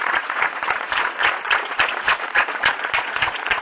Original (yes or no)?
no